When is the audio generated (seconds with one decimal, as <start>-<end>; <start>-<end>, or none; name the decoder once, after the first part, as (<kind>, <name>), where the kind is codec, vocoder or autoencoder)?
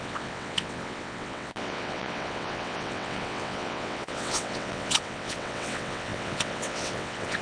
0.0-7.4 (vocoder, WaveNeXt)